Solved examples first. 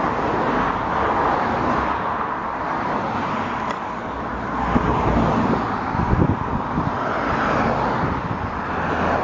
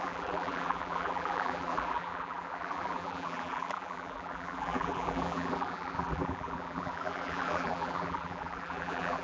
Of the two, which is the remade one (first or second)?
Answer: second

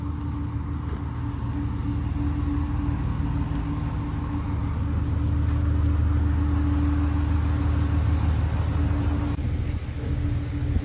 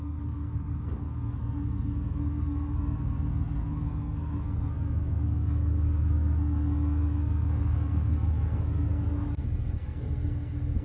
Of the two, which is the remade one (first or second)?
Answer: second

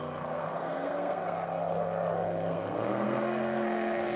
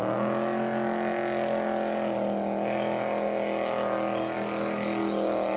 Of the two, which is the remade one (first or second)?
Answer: first